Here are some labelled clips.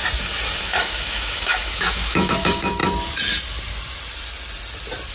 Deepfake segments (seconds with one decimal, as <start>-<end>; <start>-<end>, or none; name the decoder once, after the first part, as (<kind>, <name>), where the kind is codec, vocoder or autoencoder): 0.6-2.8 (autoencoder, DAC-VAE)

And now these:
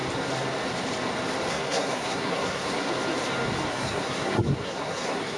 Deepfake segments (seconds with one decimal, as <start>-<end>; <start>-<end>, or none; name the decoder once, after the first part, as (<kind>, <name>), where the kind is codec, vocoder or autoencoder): 1.5-2.9 (codec, SNAC); 3.7-5.4

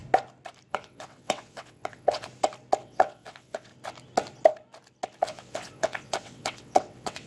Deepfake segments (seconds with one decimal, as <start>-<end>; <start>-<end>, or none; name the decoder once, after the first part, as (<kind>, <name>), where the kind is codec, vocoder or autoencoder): 0.7-2.3 (vocoder, WaveNeXt); 2.8-3.7; 5.2-7.3

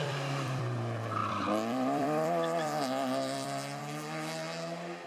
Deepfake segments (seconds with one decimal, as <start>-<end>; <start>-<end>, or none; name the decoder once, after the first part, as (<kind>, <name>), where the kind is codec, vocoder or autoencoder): 0.0-0.6 (vocoder, BigVGAN v2); 1.2-3.8

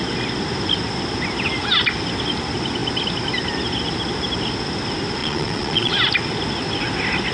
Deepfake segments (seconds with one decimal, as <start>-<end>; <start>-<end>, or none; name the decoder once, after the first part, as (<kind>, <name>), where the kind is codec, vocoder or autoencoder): 5.2-5.9 (vocoder, Vocos)

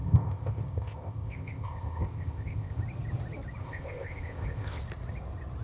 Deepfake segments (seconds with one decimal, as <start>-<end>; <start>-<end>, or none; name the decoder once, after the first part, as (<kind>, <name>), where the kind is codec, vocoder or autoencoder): 0.0-2.8 (codec, ZipCodec); 3.6-4.8

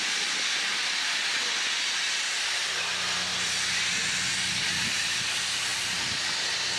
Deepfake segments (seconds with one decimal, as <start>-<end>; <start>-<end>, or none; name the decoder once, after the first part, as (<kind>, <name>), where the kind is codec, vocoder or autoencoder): 5.7-6.8 (vocoder, BigVGAN v2)